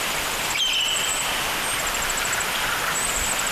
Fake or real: real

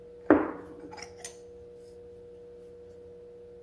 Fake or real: real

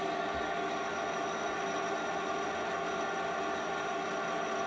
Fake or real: real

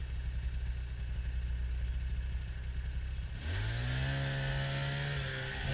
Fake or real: real